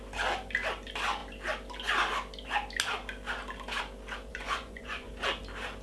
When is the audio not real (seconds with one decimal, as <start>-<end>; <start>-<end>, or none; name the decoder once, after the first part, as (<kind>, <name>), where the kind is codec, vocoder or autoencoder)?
4.3-5.1 (vocoder, Vocos)